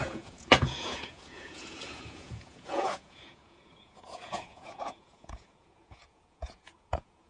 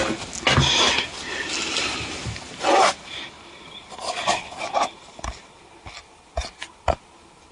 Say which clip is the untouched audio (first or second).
second